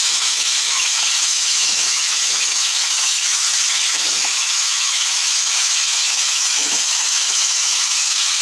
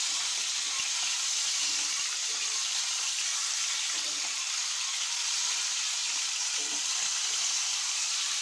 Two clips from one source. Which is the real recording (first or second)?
second